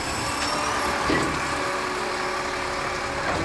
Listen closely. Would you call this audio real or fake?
real